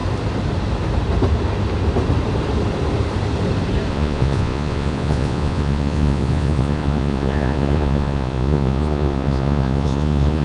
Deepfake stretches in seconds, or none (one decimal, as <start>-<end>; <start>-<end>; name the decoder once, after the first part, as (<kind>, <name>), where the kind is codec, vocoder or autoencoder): 3.9-10.4 (vocoder, Vocos)